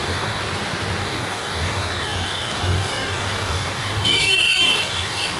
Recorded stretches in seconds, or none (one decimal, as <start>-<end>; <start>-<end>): 0.4-1.0